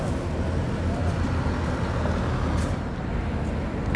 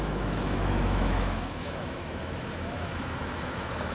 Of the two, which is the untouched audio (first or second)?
first